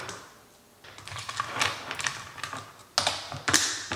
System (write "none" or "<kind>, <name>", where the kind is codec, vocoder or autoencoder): none